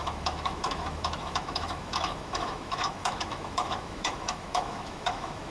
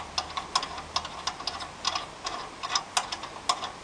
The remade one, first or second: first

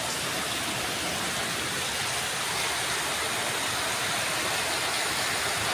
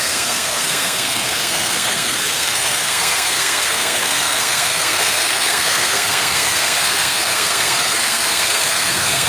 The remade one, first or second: second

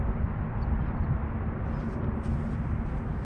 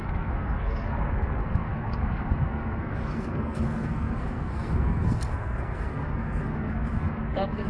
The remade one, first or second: second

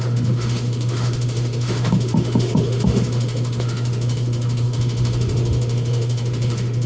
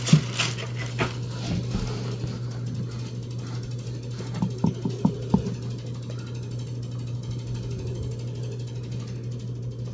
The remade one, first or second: first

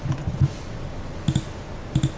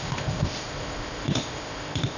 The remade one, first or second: second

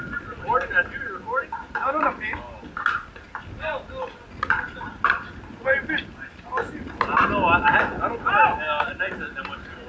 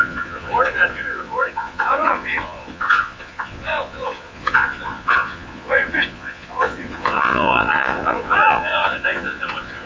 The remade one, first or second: second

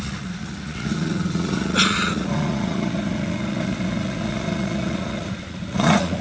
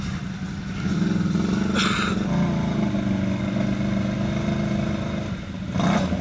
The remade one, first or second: first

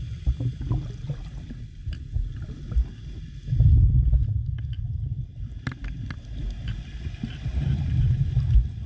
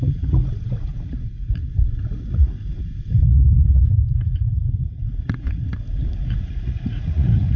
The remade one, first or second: second